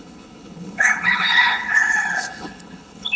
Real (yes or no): no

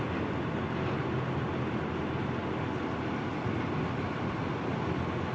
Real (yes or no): yes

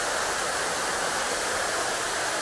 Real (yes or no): yes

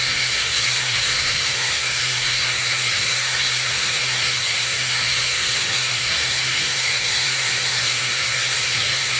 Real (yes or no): no